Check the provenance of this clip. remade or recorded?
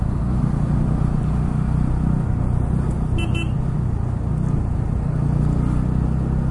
recorded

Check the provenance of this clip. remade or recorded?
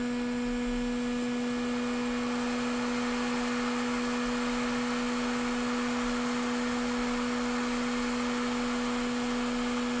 recorded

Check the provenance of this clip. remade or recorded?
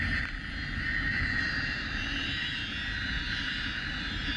recorded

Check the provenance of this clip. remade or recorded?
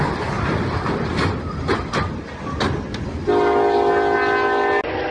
recorded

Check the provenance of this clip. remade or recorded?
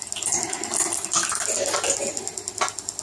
recorded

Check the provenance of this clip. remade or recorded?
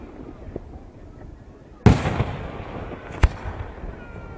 recorded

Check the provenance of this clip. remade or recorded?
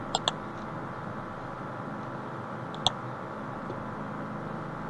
recorded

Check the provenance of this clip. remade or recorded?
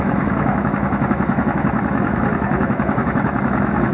remade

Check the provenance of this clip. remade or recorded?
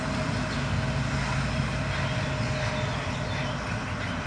recorded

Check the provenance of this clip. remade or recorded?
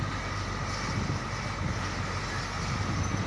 recorded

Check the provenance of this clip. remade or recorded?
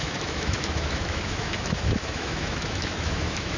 remade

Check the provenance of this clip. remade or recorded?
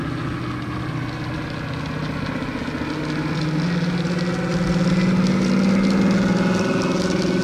recorded